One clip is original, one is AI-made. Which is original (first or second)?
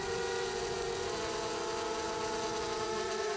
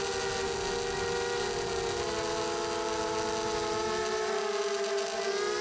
second